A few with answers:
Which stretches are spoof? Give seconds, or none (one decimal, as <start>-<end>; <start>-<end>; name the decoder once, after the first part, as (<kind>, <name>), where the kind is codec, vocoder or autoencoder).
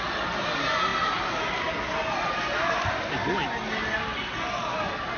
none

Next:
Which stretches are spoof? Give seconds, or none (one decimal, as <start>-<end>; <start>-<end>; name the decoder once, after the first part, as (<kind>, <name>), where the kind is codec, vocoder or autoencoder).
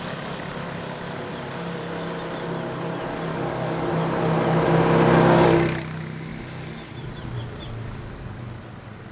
3.3-3.9 (codec, DAC)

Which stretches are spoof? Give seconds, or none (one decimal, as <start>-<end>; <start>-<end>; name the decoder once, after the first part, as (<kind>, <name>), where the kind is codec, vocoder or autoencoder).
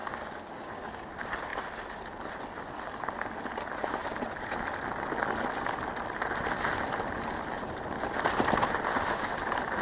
0.0-1.1 (codec, DAC)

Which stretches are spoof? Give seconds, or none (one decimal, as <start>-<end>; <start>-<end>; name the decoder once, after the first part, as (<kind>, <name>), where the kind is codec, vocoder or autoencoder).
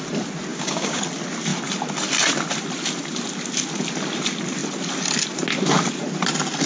0.5-1.0 (codec, DAC)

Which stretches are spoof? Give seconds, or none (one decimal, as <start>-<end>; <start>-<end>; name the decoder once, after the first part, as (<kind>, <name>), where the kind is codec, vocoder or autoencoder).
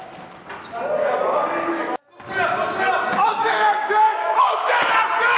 1.0-1.7 (codec, DAC); 3.3-4.8